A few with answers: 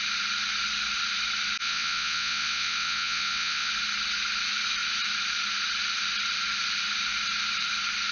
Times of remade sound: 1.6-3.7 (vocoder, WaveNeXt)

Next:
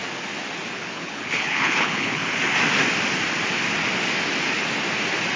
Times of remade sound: 0.7-2.2 (codec, HILCodec)

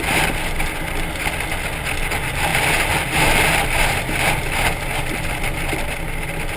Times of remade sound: none

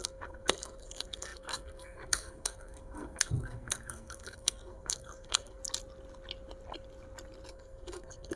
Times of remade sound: 0.0-5.6 (codec, SNAC); 7.5-8.4